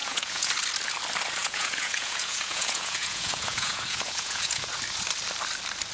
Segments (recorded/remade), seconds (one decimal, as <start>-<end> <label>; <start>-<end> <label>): 0.0-0.5 remade; 0.5-1.4 recorded; 1.4-4.7 remade; 4.7-5.9 recorded

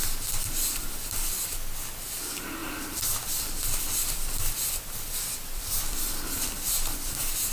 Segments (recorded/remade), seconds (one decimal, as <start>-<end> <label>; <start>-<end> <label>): 0.0-2.6 recorded; 2.6-7.1 remade; 7.1-7.5 recorded

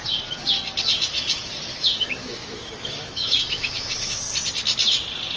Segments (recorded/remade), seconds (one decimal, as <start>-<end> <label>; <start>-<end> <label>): 0.0-1.7 recorded; 1.7-4.2 remade; 4.2-5.4 recorded